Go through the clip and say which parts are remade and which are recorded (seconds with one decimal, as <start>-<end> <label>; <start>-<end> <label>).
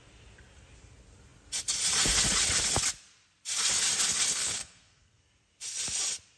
0.0-4.3 recorded; 4.3-5.2 remade; 5.2-6.4 recorded